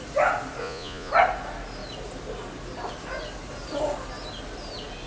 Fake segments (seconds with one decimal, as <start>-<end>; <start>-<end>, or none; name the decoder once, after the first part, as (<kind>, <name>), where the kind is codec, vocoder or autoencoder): 0.6-1.1 (vocoder, Vocos)